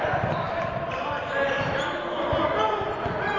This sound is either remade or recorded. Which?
recorded